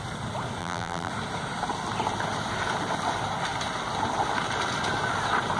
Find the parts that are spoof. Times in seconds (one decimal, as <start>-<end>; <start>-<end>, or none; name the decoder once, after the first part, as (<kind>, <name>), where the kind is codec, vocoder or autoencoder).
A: 0.6-1.1 (vocoder, BigVGAN v2)